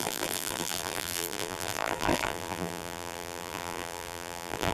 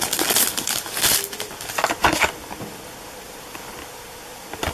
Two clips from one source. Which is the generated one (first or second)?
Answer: first